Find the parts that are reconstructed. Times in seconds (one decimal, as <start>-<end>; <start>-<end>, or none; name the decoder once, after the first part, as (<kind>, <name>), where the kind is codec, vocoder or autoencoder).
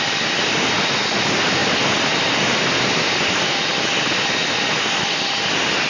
none